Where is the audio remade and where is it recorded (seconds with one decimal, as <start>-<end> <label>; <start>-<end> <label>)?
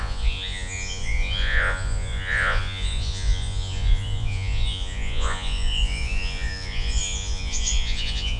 0.0-8.4 remade